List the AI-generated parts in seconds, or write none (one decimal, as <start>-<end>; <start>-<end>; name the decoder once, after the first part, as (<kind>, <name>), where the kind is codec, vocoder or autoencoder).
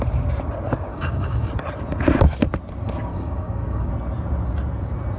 0.9-1.5 (codec, DAC); 3.1-3.9